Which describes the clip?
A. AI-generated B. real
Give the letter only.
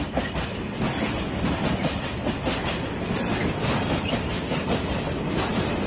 B